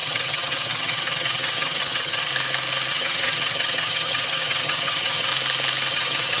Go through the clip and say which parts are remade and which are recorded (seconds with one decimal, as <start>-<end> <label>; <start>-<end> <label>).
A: 0.0-2.3 remade; 2.3-2.9 recorded; 2.9-5.3 remade; 5.3-5.9 recorded; 5.9-6.4 remade